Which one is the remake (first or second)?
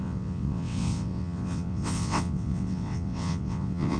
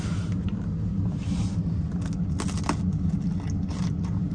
first